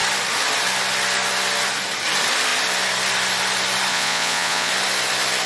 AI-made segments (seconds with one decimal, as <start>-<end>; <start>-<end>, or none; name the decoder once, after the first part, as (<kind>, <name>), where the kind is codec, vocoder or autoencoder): 3.9-4.7 (vocoder, Vocos)